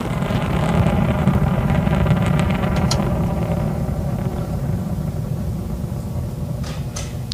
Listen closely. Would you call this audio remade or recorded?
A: remade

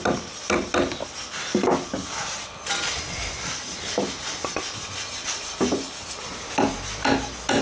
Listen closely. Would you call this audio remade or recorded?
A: recorded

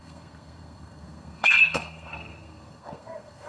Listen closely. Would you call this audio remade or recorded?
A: remade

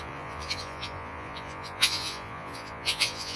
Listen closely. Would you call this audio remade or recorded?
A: remade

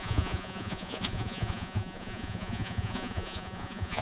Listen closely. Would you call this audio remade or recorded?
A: remade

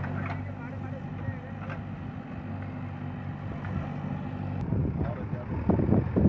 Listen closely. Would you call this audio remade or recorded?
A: recorded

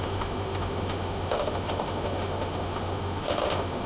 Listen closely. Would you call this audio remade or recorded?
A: remade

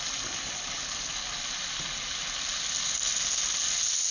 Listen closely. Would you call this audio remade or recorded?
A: recorded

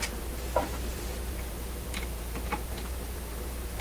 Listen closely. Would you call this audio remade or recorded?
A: remade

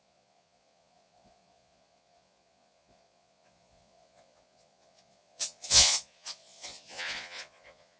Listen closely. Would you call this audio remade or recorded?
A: remade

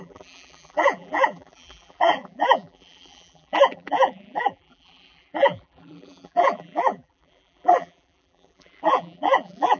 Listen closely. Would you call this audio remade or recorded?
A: remade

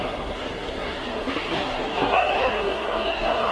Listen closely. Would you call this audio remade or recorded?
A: remade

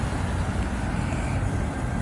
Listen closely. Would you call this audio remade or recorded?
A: recorded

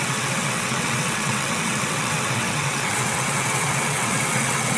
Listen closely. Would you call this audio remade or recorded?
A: remade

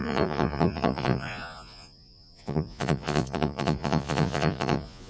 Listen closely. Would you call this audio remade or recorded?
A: remade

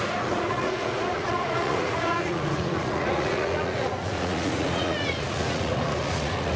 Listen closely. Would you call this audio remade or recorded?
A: remade